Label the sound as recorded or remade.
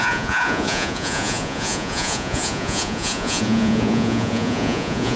remade